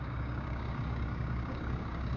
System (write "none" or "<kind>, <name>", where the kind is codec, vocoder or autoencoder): codec, DAC